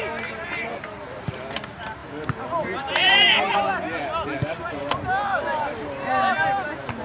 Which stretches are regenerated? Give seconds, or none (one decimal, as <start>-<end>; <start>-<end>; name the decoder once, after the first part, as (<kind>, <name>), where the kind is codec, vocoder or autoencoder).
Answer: none